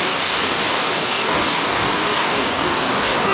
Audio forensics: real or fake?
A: fake